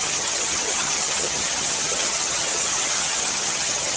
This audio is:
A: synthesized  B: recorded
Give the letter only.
A